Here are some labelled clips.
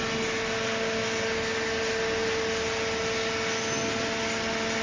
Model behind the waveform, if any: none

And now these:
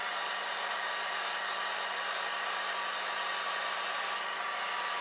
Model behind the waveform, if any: none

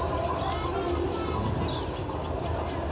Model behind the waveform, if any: none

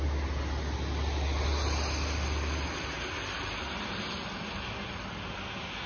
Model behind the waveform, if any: none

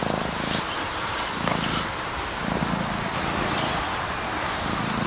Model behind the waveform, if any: none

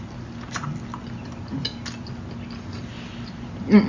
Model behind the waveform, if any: none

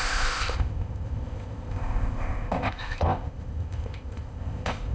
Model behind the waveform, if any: codec, ZipCodec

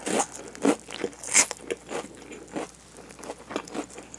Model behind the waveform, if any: none